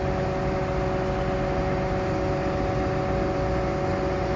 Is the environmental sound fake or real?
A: real